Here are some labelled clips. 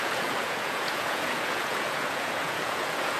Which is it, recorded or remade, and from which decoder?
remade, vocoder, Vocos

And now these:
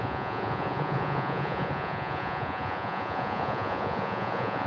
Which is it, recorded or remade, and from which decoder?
remade, vocoder, Vocos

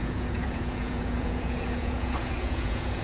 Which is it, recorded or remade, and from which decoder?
remade, vocoder, Vocos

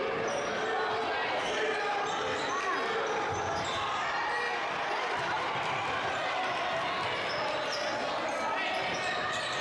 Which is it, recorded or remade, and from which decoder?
recorded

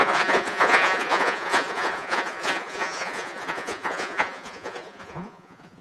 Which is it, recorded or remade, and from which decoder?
remade, vocoder, Vocos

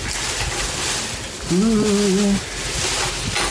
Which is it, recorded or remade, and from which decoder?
recorded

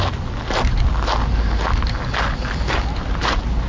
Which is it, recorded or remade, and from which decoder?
recorded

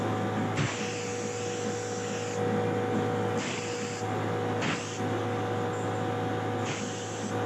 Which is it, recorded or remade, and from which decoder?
recorded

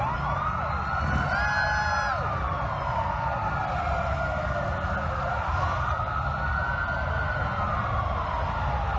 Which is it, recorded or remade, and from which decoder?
recorded